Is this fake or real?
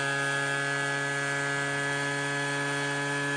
real